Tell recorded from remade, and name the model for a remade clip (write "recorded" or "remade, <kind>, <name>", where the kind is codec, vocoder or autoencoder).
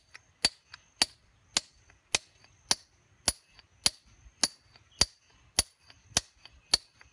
recorded